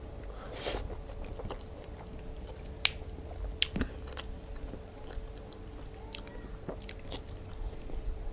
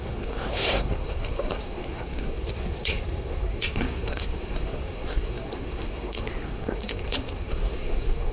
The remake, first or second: second